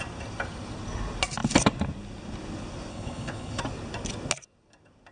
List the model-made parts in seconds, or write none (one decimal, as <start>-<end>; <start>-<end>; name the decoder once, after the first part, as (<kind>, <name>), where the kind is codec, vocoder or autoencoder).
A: 2.9-3.6 (codec, HILCodec)